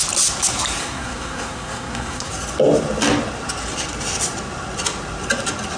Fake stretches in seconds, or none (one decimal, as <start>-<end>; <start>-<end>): 0.8-2.3